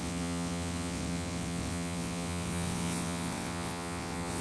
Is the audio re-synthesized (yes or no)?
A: yes